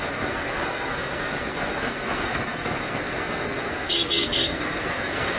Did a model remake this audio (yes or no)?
yes